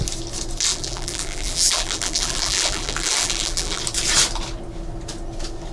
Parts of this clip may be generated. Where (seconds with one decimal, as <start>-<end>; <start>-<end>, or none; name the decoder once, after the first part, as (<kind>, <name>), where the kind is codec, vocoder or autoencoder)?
0.7-3.8 (vocoder, BigVGAN v2)